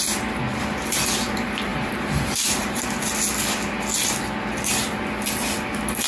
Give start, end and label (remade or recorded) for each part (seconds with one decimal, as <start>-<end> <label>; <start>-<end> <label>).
0.0-1.7 recorded; 1.7-2.8 remade; 2.8-6.1 recorded